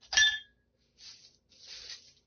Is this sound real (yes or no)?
yes